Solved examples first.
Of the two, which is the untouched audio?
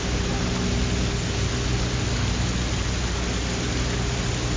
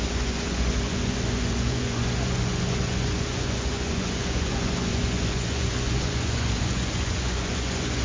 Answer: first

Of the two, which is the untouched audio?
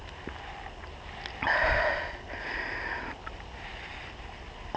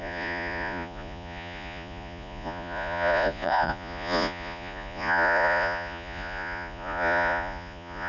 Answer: first